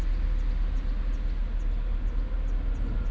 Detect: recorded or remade recorded